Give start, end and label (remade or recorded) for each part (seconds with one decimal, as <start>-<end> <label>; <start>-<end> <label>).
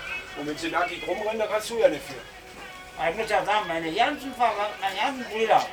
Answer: 0.0-0.6 recorded; 0.6-2.1 remade; 2.1-5.7 recorded